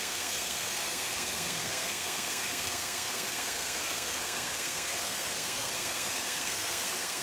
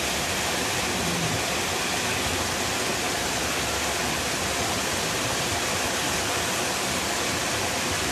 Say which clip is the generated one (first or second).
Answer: first